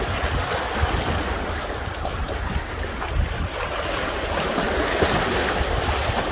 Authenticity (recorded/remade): recorded